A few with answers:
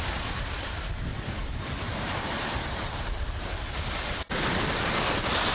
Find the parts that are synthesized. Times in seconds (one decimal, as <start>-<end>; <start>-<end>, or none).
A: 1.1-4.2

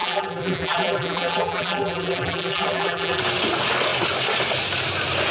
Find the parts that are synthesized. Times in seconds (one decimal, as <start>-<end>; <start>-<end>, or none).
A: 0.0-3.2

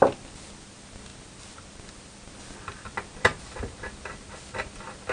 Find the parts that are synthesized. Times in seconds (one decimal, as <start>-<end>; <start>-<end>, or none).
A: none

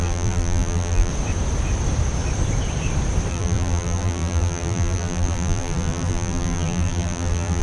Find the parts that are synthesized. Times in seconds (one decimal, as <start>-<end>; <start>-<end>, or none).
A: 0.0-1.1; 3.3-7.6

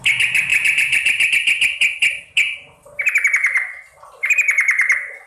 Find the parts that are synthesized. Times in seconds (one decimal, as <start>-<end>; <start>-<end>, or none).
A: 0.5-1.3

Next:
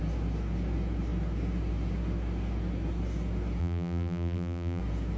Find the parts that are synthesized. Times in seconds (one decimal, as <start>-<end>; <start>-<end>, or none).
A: 3.6-4.8

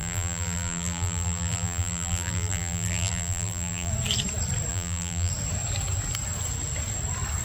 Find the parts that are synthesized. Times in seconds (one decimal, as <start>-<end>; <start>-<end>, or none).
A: 0.0-3.9; 4.7-5.3